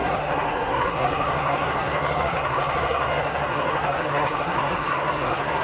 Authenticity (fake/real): fake